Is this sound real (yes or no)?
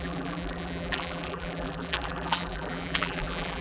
no